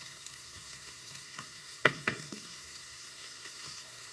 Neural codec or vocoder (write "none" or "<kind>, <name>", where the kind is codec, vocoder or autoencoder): codec, SNAC